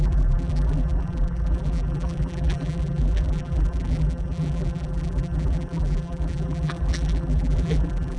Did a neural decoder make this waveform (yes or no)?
yes